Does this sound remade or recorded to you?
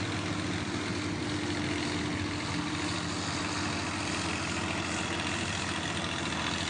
recorded